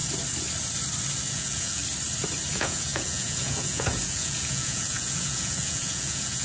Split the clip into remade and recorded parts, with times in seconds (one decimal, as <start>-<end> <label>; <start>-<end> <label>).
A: 0.0-1.3 recorded; 1.3-1.8 remade; 1.8-2.5 recorded; 2.5-6.4 remade